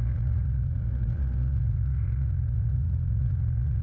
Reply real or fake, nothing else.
fake